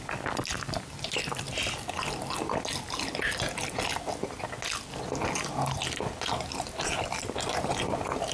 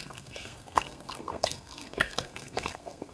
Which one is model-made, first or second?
second